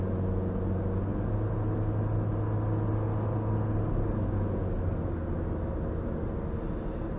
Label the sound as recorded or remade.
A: recorded